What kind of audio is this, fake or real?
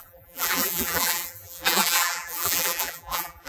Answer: fake